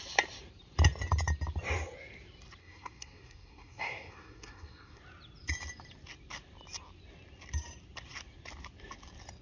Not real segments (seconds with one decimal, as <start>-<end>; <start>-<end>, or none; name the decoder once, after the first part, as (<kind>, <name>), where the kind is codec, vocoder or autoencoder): 2.6-5.0 (codec, SNAC)